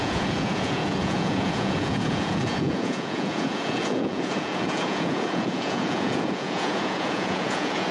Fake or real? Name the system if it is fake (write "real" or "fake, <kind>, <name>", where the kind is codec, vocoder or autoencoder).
fake, vocoder, Vocos